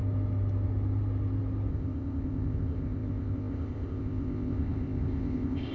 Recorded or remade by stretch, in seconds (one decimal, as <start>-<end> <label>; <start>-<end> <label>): 0.0-1.7 recorded; 1.7-5.7 remade

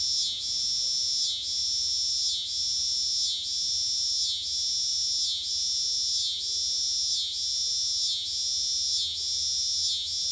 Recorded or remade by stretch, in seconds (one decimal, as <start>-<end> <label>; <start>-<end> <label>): 0.0-10.3 recorded

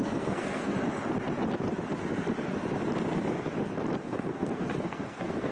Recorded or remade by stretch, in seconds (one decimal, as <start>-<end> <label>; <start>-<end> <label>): 0.0-0.7 remade; 0.7-4.0 recorded; 4.0-5.5 remade

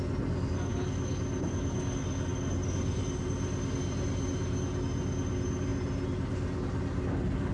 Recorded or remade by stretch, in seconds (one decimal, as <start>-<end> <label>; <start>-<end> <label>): 0.0-7.5 recorded